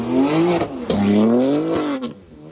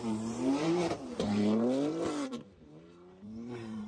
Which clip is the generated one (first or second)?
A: second